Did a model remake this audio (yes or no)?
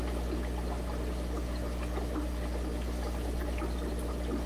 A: no